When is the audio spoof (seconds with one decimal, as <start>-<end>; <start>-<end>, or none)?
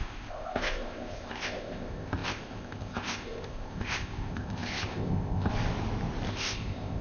0.0-5.5; 6.3-7.0